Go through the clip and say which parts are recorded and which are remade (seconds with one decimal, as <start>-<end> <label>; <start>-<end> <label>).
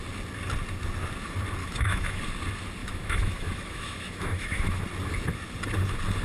0.0-1.6 recorded; 1.6-2.2 remade; 2.2-2.8 recorded; 2.8-4.8 remade; 4.8-6.2 recorded